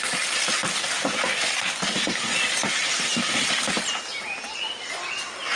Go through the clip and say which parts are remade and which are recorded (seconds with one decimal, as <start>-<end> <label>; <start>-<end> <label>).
0.0-5.6 recorded